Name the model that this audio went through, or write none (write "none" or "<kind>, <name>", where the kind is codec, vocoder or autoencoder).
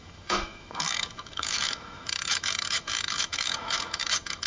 autoencoder, DAC-VAE